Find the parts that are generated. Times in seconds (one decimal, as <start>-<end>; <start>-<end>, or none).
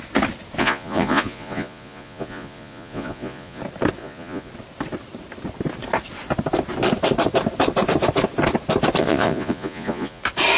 0.6-3.6; 4.0-4.5; 9.0-10.2